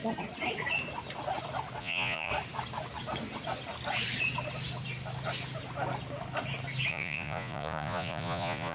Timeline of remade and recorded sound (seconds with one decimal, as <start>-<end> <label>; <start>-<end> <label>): 0.0-1.8 recorded; 1.8-2.3 remade; 2.3-6.9 recorded; 6.9-8.7 remade